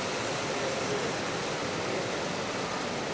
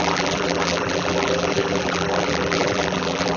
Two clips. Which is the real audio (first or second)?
first